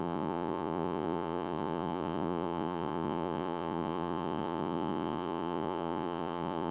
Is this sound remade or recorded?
remade